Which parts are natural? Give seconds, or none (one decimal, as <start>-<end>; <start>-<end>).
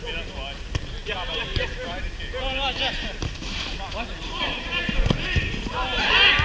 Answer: 0.0-1.0; 2.0-4.2; 4.9-6.4